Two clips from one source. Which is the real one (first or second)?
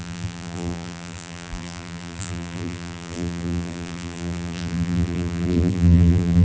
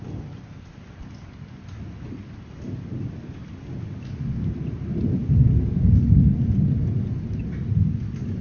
second